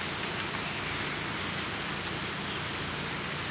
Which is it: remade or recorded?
recorded